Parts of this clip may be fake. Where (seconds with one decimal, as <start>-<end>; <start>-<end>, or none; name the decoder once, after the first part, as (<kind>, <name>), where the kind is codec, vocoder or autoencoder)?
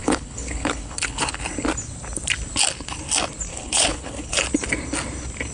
0.0-1.4 (codec, HILCodec); 3.5-4.3